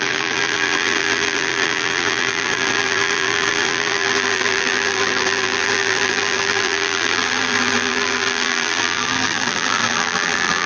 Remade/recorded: remade